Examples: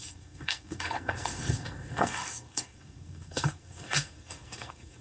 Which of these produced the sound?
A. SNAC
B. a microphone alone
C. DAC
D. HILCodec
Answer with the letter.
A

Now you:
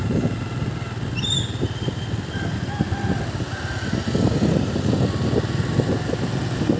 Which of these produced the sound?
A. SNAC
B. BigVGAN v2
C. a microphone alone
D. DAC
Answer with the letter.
C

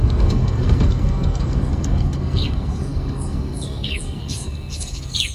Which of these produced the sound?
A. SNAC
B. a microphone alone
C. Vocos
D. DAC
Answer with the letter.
A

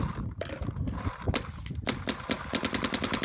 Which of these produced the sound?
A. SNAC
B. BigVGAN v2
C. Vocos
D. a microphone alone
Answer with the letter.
D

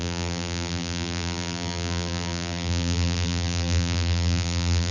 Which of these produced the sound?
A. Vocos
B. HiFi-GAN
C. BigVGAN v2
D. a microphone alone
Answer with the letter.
C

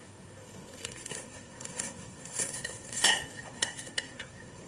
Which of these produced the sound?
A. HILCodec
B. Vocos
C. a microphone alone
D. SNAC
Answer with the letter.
D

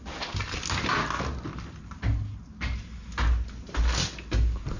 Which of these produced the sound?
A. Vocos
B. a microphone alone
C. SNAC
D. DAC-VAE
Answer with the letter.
B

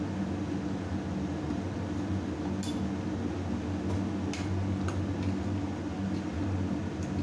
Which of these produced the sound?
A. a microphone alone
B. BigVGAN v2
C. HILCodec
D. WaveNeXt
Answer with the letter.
A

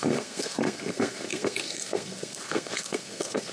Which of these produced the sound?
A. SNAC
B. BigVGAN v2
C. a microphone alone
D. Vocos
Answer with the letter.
A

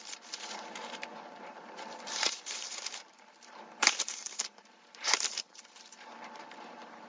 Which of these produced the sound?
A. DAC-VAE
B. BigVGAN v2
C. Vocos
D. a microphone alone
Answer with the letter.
B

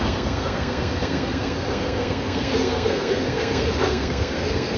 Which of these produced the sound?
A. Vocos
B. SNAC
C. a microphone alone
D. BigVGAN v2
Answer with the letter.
B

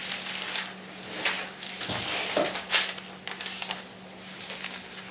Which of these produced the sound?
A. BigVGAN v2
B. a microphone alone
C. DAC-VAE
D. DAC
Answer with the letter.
B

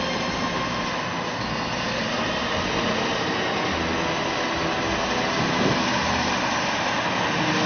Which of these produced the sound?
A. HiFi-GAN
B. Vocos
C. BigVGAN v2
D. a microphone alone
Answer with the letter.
D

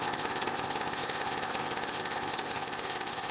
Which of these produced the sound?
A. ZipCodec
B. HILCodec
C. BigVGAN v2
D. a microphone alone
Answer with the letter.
A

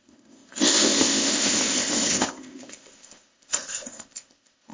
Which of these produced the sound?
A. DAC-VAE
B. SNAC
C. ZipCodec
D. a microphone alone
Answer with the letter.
C